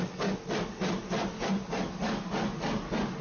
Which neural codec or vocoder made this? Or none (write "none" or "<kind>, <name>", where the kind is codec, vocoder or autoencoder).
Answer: none